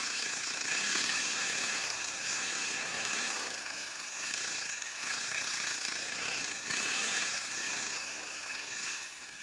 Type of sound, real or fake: fake